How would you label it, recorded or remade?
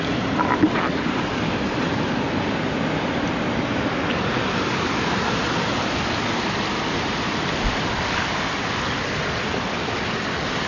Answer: recorded